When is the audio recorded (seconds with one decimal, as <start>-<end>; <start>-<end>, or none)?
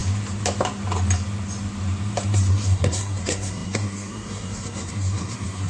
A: 0.0-2.5